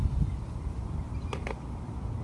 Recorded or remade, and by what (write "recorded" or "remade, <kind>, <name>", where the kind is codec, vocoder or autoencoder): recorded